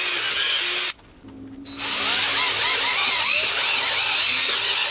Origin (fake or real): real